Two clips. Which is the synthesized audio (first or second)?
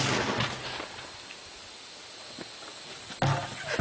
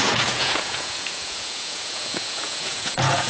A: second